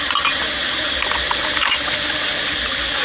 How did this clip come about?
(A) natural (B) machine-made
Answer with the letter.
A